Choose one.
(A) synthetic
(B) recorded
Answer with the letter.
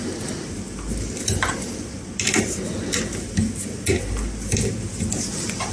B